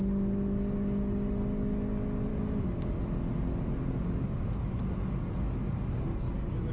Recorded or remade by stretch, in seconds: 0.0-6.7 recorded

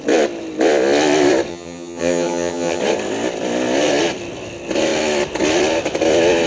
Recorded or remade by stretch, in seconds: 0.0-1.5 recorded; 1.5-2.8 remade; 2.8-6.5 recorded

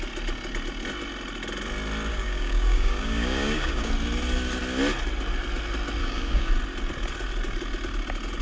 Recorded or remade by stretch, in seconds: 0.0-2.1 recorded; 2.1-3.9 remade; 3.9-6.0 recorded; 6.0-6.5 remade; 6.5-8.4 recorded

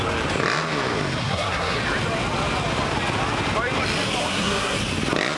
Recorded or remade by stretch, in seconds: 0.0-1.2 recorded; 1.2-1.8 remade; 1.8-4.2 recorded; 4.2-4.8 remade; 4.8-5.4 recorded